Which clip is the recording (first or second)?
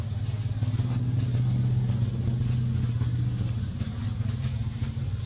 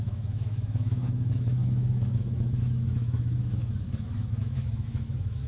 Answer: first